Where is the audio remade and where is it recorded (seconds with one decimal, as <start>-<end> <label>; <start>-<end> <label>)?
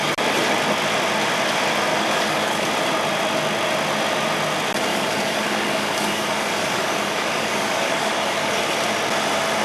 0.0-1.9 recorded; 1.9-2.7 remade; 2.7-4.9 recorded; 4.9-8.6 remade; 8.6-9.6 recorded